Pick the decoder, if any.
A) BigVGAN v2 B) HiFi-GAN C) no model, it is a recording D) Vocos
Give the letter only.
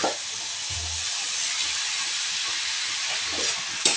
C